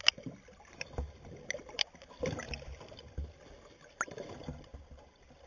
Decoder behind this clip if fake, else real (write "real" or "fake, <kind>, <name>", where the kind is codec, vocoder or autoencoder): real